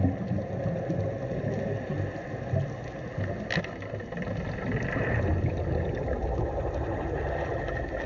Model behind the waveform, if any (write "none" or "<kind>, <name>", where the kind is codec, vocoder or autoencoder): none